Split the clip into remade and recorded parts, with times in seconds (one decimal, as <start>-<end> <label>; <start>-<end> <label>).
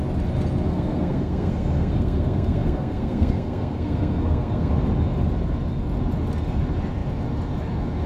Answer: 0.0-0.7 recorded; 0.7-4.7 remade; 4.7-8.1 recorded